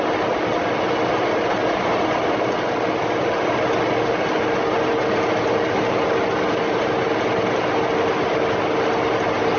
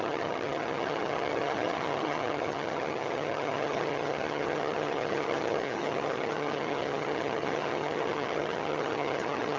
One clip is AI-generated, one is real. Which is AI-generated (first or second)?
second